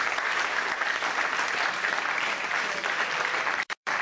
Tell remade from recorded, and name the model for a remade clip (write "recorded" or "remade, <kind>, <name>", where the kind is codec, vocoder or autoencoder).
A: remade, vocoder, BigVGAN v2